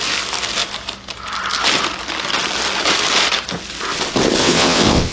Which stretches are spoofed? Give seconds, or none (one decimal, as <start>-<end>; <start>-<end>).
4.4-5.1